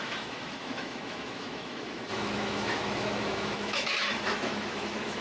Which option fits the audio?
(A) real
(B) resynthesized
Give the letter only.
B